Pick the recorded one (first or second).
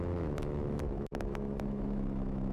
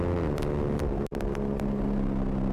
second